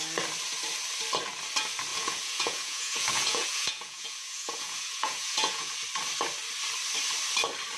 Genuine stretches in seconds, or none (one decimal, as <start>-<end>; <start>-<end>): 0.0-1.9; 5.7-7.8